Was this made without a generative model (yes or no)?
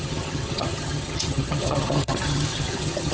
no